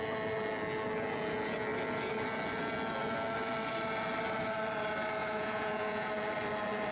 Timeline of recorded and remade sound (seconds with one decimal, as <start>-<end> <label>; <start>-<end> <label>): 0.0-5.2 recorded; 5.2-6.1 remade; 6.1-6.9 recorded